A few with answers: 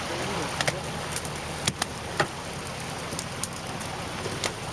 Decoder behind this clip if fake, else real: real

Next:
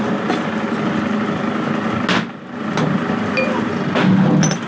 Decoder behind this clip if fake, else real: real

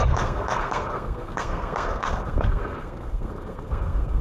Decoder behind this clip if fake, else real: fake, codec, SNAC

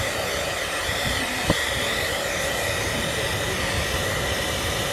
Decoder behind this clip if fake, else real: real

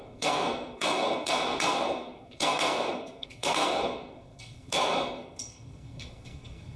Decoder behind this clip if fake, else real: fake, codec, SNAC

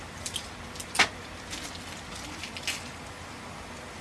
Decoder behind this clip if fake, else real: real